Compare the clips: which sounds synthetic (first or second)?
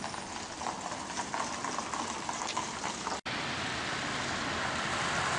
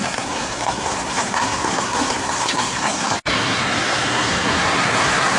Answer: second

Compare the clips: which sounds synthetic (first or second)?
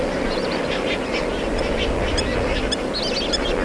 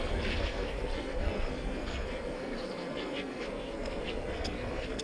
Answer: second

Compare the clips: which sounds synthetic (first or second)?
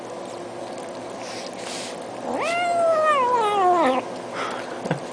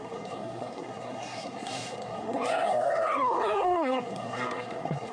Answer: second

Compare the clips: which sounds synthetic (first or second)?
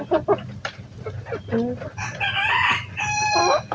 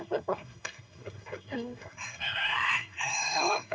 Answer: second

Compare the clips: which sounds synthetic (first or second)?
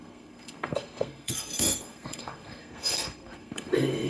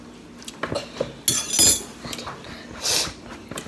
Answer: first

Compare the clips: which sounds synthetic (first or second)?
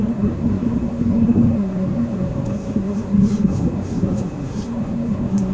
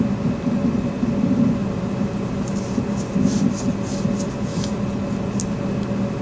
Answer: first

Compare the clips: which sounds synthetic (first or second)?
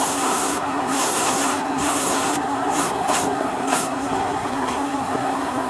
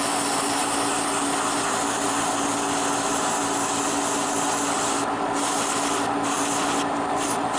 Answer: first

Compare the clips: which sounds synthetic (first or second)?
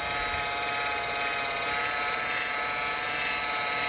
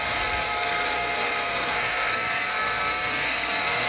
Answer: second